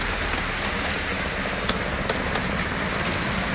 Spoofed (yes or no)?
no